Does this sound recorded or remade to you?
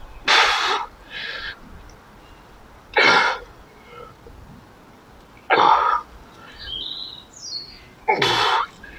recorded